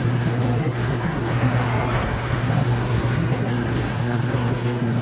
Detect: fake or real fake